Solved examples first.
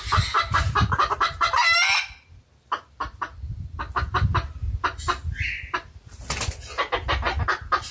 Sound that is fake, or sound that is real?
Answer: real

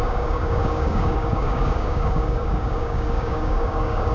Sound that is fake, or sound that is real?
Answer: fake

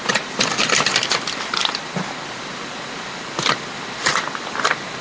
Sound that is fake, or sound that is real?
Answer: real